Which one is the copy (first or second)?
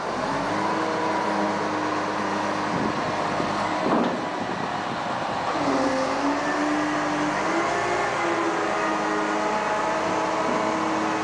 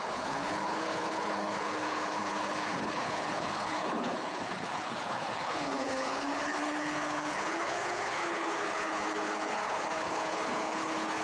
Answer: second